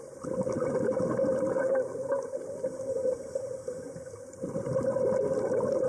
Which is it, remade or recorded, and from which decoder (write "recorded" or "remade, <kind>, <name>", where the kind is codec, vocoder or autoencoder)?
recorded